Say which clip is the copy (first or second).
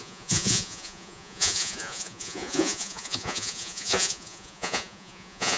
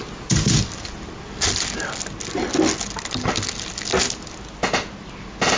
first